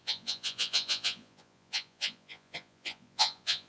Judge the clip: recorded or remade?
remade